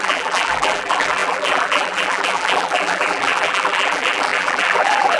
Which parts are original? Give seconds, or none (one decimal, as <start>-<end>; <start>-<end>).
none